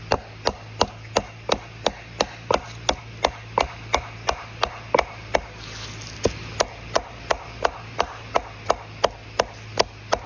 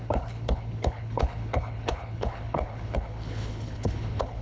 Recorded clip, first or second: first